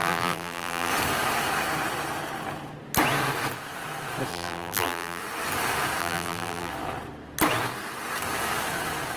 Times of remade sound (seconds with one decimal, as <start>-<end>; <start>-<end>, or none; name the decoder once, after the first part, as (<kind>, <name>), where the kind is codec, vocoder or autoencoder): 0.0-0.9 (vocoder, BigVGAN v2); 4.3-5.2; 6.0-6.7